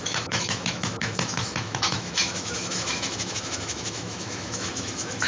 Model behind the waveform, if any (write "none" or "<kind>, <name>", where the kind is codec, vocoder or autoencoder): autoencoder, DAC-VAE